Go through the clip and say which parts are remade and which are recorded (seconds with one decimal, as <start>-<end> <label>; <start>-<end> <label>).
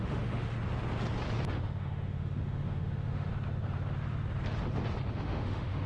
0.0-0.5 remade; 0.5-1.5 recorded; 1.5-3.3 remade; 3.3-5.1 recorded; 5.1-5.9 remade